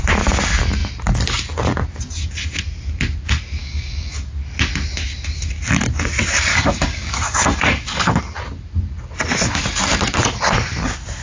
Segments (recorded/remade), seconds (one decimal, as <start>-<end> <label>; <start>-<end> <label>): 0.0-3.6 recorded; 3.6-4.3 remade; 4.3-6.5 recorded; 6.5-8.2 remade; 8.2-11.2 recorded